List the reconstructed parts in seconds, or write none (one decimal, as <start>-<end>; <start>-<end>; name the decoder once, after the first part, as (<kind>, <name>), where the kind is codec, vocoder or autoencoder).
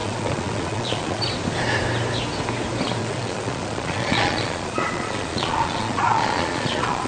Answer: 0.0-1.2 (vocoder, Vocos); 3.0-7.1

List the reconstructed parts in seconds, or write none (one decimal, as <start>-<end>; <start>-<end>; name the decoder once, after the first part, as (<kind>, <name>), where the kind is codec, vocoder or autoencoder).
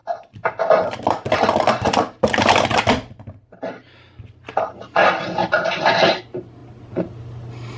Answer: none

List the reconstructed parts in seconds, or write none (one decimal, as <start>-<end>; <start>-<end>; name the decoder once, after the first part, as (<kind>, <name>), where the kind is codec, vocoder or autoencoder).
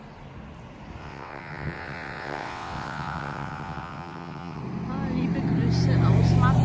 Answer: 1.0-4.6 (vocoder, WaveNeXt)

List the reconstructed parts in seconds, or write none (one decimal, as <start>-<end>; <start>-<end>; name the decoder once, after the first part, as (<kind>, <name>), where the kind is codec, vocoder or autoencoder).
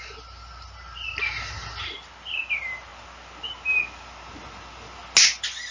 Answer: none